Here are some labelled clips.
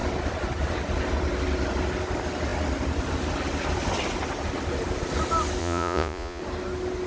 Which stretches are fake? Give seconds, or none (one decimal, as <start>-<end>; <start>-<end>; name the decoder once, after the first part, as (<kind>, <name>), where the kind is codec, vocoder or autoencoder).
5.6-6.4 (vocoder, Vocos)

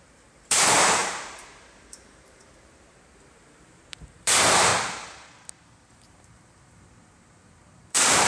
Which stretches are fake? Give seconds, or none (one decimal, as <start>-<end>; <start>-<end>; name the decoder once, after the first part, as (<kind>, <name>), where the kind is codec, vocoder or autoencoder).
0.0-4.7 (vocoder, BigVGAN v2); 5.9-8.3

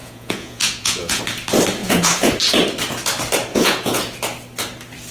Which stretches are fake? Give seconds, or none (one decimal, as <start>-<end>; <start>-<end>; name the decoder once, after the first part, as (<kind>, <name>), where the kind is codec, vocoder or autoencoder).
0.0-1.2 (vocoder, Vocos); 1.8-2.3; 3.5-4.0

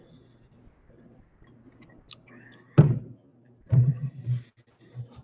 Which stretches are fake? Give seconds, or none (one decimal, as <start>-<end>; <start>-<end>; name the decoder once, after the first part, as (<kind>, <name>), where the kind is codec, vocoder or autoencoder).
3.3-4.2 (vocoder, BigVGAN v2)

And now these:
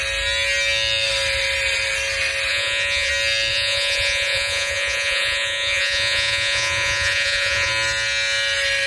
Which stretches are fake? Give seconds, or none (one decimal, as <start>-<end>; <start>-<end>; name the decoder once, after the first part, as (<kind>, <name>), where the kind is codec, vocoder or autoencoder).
2.5-3.1 (vocoder, Vocos); 3.5-7.7

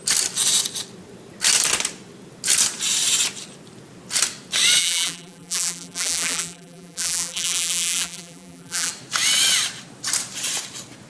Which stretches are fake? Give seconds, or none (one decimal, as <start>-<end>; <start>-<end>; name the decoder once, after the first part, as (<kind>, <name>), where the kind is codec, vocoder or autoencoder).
4.8-8.9 (vocoder, BigVGAN v2)

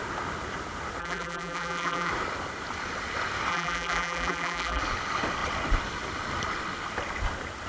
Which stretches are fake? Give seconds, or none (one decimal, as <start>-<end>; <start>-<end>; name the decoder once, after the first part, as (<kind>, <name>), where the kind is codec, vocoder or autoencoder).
1.0-2.1 (vocoder, BigVGAN v2); 3.5-4.8